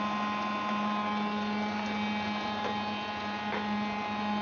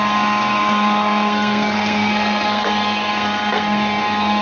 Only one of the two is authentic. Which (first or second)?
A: first